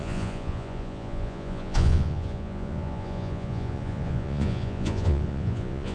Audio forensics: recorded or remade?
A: remade